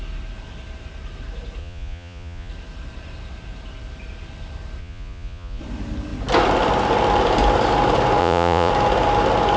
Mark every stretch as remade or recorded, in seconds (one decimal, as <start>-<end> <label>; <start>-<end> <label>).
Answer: 0.0-1.6 recorded; 1.6-2.5 remade; 2.5-4.8 recorded; 4.8-5.6 remade; 5.6-8.2 recorded; 8.2-8.7 remade; 8.7-9.6 recorded